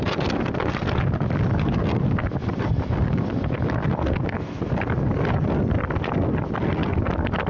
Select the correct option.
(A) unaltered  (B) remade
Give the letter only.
A